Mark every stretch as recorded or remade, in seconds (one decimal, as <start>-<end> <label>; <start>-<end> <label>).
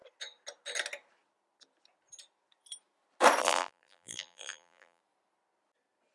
0.0-3.4 recorded; 3.4-5.0 remade; 5.0-6.1 recorded